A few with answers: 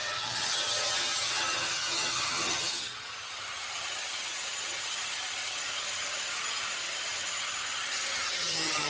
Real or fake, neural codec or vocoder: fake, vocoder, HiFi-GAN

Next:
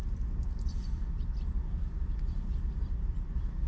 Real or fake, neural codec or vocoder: real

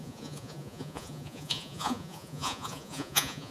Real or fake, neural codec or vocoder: fake, vocoder, Vocos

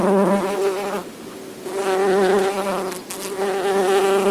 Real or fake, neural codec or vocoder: real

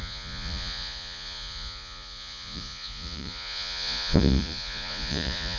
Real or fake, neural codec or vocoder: fake, vocoder, Vocos